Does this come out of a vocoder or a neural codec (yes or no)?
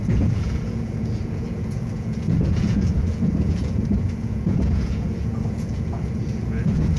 yes